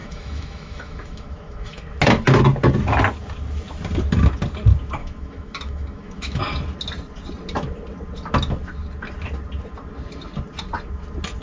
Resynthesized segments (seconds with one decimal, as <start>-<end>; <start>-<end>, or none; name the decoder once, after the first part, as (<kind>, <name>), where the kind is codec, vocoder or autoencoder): 0.0-1.8 (autoencoder, DAC-VAE); 5.0-6.4